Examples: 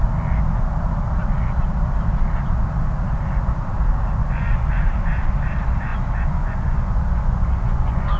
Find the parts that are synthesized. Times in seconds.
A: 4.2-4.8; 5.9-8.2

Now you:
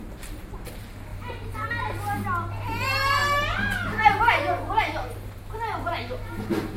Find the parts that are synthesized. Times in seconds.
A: 1.1-1.7

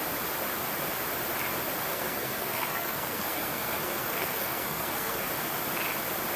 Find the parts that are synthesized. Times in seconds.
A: 1.9-5.3